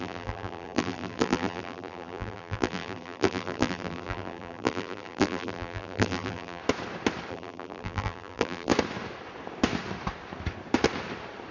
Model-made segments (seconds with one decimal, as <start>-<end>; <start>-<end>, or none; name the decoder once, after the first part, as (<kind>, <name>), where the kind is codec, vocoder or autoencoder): 0.0-6.6 (vocoder, BigVGAN v2); 7.3-8.7